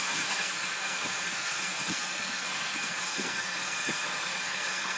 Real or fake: fake